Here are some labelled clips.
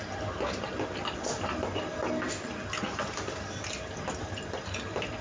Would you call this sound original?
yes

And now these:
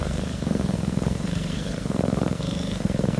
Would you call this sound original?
no